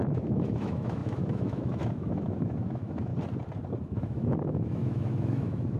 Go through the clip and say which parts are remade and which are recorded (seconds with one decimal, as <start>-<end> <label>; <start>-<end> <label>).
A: 0.0-3.1 remade; 3.1-3.9 recorded; 3.9-5.8 remade

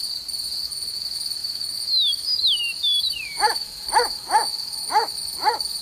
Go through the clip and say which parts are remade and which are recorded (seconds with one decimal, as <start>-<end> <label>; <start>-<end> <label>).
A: 0.0-0.6 recorded; 0.6-5.8 remade

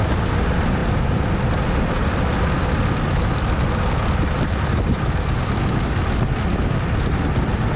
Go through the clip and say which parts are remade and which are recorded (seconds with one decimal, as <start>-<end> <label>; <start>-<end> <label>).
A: 0.0-7.8 recorded

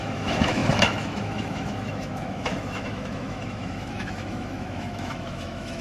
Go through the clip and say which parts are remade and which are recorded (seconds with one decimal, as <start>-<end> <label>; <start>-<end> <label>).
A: 0.0-5.8 remade

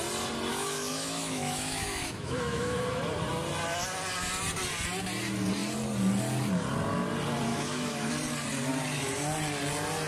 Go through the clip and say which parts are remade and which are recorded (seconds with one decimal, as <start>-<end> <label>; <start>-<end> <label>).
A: 0.0-0.5 recorded; 0.5-3.0 remade; 3.0-7.5 recorded; 7.5-8.1 remade; 8.1-10.1 recorded

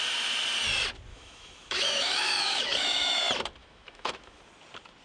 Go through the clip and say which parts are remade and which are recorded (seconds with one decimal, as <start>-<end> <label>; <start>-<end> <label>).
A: 0.0-1.1 recorded; 1.1-3.2 remade; 3.2-3.6 recorded; 3.6-4.4 remade; 4.4-5.0 recorded